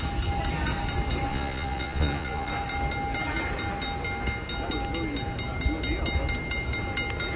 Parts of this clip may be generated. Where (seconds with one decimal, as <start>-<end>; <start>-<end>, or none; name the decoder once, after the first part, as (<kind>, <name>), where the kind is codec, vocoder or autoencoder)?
1.3-2.5 (vocoder, Vocos)